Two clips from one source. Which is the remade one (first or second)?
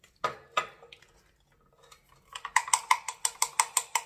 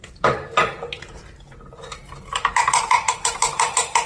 second